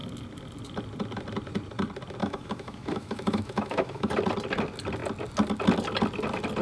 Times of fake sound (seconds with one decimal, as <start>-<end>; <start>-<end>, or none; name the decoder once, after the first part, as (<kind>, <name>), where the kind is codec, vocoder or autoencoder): 2.2-4.1 (autoencoder, DAC-VAE)